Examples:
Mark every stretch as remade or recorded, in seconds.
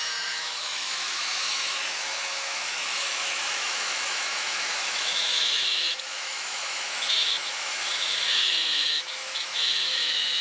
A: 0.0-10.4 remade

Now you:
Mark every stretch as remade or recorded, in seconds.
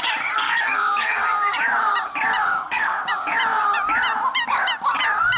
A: 0.0-0.4 recorded; 0.4-1.6 remade; 1.6-2.4 recorded; 2.4-3.0 remade; 3.0-5.4 recorded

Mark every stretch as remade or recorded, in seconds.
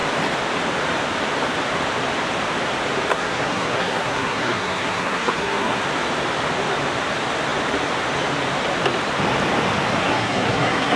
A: 0.0-3.1 recorded; 3.1-5.8 remade; 5.8-10.0 recorded; 10.0-11.0 remade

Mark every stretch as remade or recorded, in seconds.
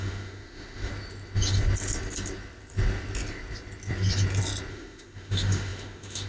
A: 0.0-0.9 remade; 0.9-4.7 recorded; 4.7-6.3 remade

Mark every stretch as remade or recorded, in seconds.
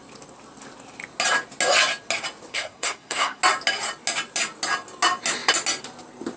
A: 0.0-2.5 recorded; 2.5-3.4 remade; 3.4-6.4 recorded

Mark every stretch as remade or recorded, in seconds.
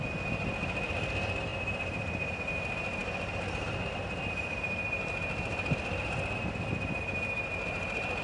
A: 0.0-8.2 recorded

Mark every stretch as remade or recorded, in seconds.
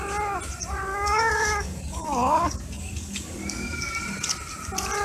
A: 0.0-0.9 recorded; 0.9-3.9 remade; 3.9-5.0 recorded